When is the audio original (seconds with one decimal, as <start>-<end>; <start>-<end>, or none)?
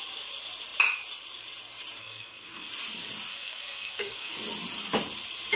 0.0-2.0; 2.7-3.3; 4.3-5.6